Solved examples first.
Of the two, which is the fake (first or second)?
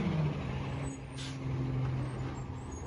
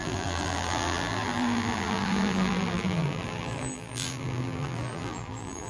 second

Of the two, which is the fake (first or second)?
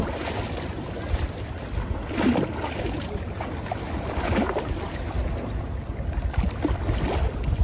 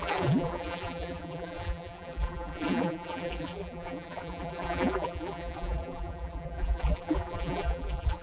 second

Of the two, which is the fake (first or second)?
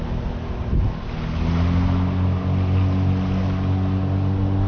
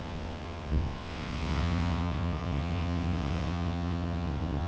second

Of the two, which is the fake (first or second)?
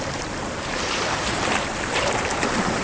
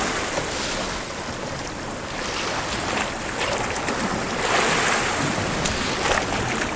first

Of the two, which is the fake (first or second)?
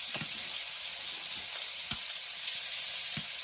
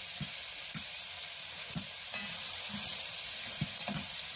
second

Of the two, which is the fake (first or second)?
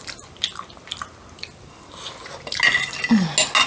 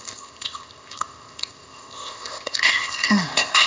second